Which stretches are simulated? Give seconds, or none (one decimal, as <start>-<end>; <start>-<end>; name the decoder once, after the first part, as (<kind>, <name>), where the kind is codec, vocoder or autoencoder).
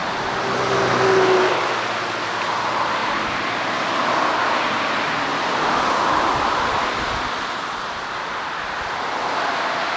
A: none